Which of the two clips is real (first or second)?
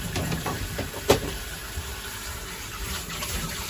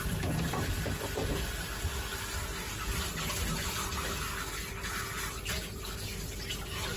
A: second